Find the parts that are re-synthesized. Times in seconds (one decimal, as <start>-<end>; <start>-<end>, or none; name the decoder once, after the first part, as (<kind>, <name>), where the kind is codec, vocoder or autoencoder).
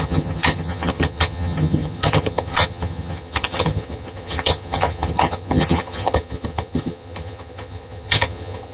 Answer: 0.0-8.7 (vocoder, HiFi-GAN)